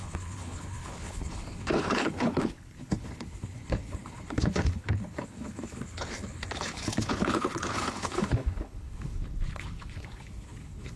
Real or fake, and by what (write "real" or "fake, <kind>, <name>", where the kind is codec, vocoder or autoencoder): fake, codec, HILCodec